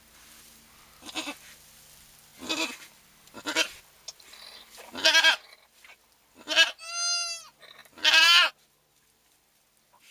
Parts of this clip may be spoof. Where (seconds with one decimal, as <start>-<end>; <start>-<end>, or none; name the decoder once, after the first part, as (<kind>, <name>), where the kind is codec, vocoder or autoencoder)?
none

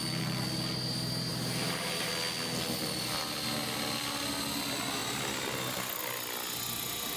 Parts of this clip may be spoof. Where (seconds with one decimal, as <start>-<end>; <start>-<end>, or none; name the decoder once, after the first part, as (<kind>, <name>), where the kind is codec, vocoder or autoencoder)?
1.3-2.1 (vocoder, BigVGAN v2)

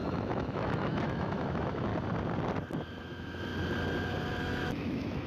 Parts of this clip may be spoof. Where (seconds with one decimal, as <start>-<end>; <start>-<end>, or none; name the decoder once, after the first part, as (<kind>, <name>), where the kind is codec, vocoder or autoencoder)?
0.0-1.9 (autoencoder, DAC-VAE); 3.0-3.5; 4.4-5.3

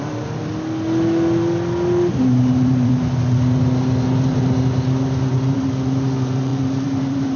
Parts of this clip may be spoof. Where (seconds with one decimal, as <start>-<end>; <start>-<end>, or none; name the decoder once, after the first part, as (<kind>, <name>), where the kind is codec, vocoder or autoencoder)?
0.0-0.5 (vocoder, BigVGAN v2); 2.2-2.9; 5.2-7.4

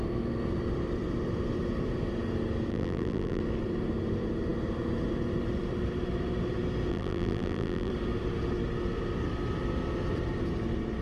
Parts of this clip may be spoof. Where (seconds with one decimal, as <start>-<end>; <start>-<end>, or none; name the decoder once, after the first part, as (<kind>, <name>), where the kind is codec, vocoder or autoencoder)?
2.7-3.4 (vocoder, BigVGAN v2); 6.9-7.9